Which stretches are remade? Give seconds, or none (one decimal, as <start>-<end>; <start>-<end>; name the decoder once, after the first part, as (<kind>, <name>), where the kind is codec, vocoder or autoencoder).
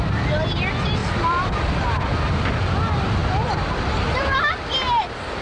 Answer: none